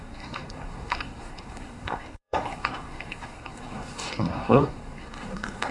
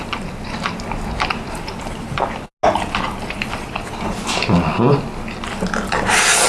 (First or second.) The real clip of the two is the second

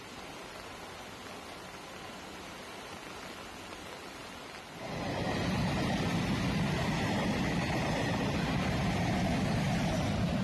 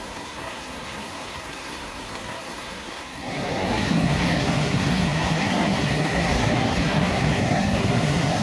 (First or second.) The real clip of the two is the first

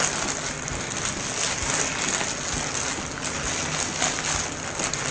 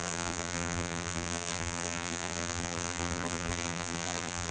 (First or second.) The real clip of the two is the first